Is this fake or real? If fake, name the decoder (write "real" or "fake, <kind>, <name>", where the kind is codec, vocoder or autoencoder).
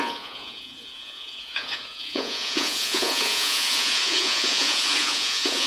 fake, vocoder, Vocos